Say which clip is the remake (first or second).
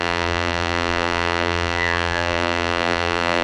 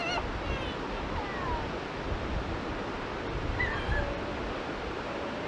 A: first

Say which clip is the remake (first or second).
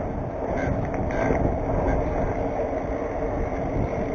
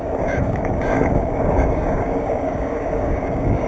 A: second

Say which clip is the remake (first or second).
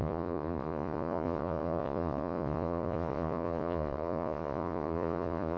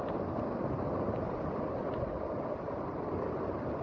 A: first